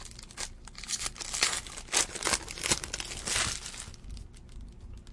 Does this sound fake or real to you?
real